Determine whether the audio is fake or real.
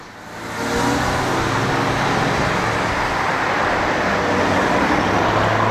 real